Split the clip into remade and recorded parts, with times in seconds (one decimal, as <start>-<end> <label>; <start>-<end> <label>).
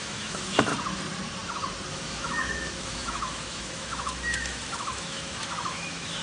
0.0-0.7 remade; 0.7-1.9 recorded; 1.9-6.2 remade